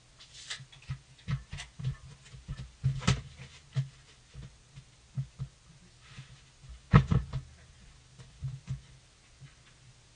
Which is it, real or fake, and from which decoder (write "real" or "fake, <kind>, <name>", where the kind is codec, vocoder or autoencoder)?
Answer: real